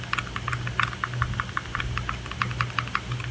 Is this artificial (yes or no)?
no